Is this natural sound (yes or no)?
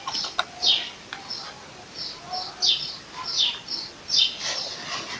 yes